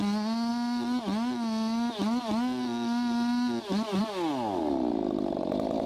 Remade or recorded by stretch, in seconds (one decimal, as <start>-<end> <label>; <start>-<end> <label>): 0.0-5.9 recorded

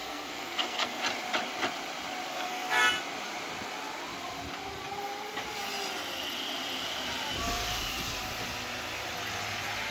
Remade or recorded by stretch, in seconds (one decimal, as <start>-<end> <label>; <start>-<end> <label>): 0.0-1.0 remade; 1.0-2.3 recorded; 2.3-2.8 remade; 2.8-9.9 recorded

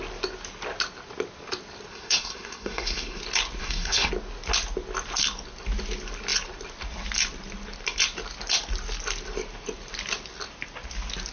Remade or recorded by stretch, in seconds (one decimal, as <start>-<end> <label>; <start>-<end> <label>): 0.0-1.9 recorded; 1.9-3.2 remade; 3.2-3.6 recorded; 3.6-4.1 remade; 4.1-11.3 recorded

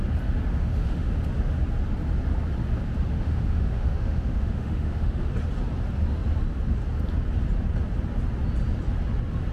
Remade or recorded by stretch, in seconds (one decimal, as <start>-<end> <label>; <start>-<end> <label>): 0.0-0.5 recorded; 0.5-1.1 remade; 1.1-3.1 recorded; 3.1-5.3 remade; 5.3-9.5 recorded

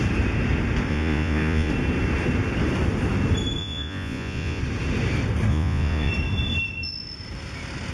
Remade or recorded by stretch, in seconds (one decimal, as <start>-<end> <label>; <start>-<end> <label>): 0.0-0.9 recorded; 0.9-1.7 remade; 1.7-3.6 recorded; 3.6-4.6 remade; 4.6-5.5 recorded; 5.5-6.1 remade; 6.1-7.9 recorded